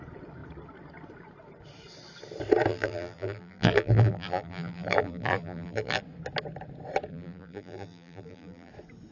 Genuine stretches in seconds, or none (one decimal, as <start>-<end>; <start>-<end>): 0.0-2.7; 6.0-7.1; 8.7-9.1